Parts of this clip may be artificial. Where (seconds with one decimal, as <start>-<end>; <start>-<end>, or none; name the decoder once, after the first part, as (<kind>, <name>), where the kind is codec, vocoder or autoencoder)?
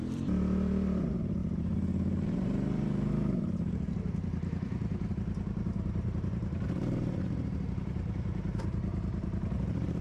0.0-10.0 (vocoder, BigVGAN v2)